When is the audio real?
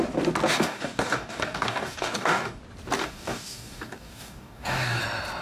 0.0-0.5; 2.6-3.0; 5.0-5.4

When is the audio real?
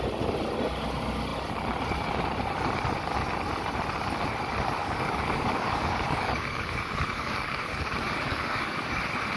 0.0-4.8; 9.0-9.4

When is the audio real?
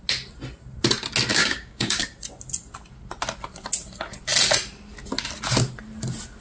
0.0-1.3; 2.0-6.4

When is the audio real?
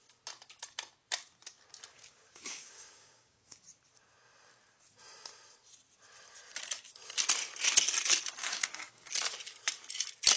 0.0-1.9; 3.6-8.4; 9.1-10.4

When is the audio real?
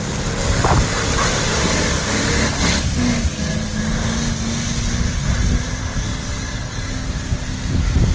0.0-6.1; 7.1-8.1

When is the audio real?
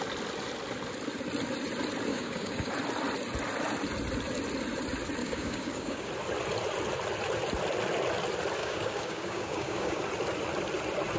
0.0-2.1; 2.7-5.2; 6.1-8.6; 10.0-11.2